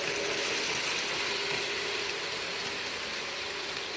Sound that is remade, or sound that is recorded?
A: recorded